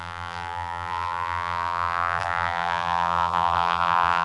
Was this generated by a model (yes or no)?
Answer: yes